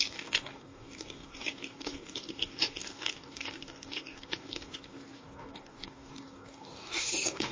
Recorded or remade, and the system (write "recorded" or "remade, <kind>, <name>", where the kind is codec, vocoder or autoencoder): remade, codec, DAC